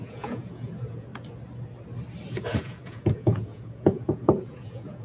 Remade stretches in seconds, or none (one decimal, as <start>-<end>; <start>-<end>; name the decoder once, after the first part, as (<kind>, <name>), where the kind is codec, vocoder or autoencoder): 0.0-1.1 (vocoder, Vocos); 2.3-5.0